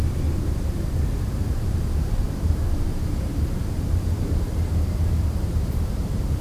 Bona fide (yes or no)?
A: no